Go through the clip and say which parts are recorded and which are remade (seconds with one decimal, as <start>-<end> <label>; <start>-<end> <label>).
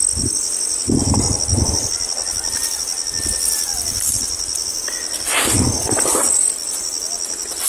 0.0-7.7 recorded